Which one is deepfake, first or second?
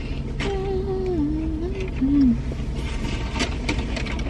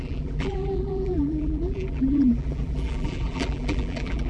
second